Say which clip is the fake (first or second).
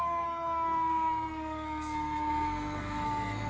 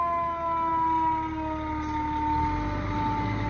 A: first